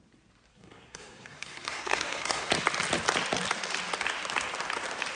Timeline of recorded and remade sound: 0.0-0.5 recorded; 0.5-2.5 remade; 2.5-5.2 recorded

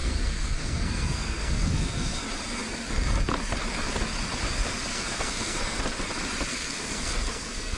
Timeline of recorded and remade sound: 0.0-2.2 remade; 2.2-4.9 recorded; 4.9-5.8 remade; 5.8-6.5 recorded; 6.5-7.8 remade